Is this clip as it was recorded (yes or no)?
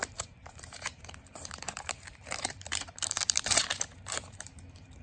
no